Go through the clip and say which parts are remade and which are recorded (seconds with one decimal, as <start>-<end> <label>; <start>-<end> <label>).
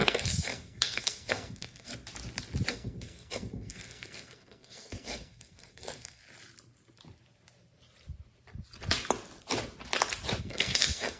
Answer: 0.0-1.9 remade; 1.9-2.7 recorded; 2.7-6.2 remade; 6.2-10.4 recorded; 10.4-11.2 remade